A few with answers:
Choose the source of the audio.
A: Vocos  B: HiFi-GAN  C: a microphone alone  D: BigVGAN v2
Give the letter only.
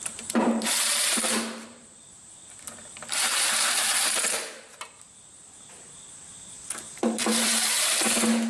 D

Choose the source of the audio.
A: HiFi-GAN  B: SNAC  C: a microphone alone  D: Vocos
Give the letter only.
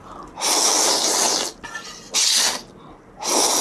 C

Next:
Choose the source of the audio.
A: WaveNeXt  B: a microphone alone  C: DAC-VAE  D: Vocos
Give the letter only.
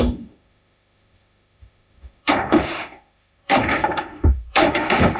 C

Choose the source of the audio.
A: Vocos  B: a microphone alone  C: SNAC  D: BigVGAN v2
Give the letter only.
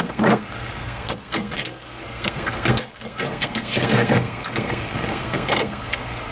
C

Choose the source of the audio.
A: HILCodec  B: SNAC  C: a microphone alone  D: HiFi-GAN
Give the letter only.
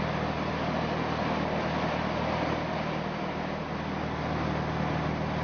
C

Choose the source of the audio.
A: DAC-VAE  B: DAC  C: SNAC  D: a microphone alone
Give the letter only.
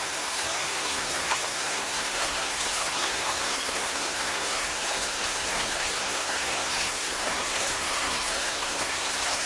C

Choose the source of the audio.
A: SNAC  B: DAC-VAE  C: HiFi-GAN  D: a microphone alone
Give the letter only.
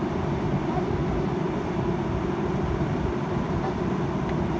D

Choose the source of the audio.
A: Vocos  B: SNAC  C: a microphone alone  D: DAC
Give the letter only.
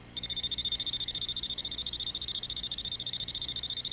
D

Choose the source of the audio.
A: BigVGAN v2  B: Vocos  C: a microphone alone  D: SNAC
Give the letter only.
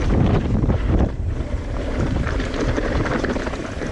A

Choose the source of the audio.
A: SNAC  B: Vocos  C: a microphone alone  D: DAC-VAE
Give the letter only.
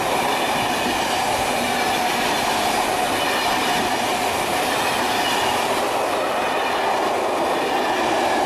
C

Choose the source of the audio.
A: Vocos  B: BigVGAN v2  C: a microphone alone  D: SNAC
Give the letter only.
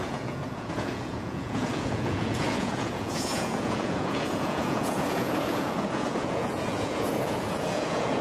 A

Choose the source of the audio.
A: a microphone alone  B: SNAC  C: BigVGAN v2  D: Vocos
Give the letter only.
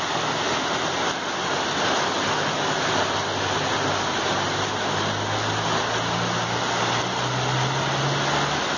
A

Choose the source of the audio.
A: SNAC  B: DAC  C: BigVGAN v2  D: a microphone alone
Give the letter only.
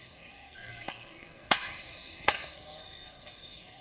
A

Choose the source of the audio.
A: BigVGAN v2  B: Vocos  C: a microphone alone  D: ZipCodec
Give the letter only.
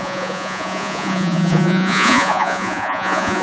B